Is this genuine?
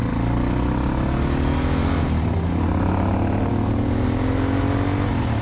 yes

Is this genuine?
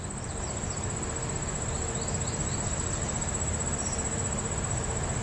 yes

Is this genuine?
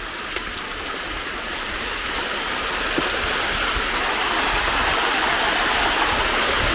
yes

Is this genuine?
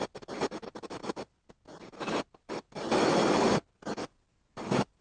yes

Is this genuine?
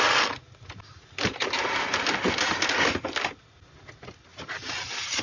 yes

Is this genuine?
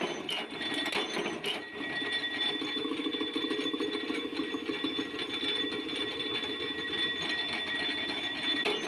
yes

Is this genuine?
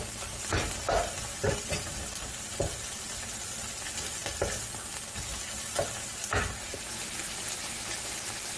yes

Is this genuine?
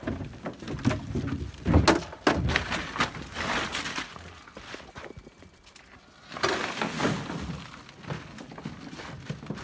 yes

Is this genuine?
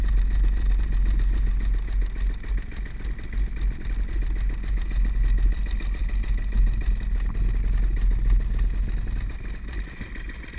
yes